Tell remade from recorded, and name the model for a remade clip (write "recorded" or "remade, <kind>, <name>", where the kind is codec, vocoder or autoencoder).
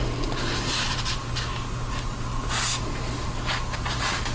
recorded